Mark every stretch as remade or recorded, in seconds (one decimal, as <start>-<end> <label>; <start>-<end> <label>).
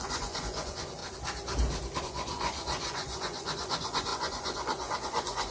0.0-1.0 remade; 1.0-2.0 recorded; 2.0-5.5 remade